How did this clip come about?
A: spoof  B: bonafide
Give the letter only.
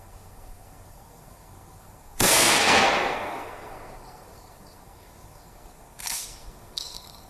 A